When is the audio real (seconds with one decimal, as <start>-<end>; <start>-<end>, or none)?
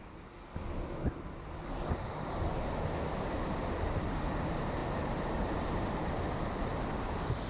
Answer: 0.0-4.8; 6.2-7.5